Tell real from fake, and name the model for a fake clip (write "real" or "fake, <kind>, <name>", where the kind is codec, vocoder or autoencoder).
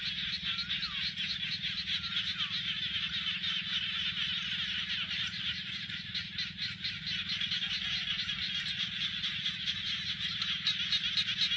real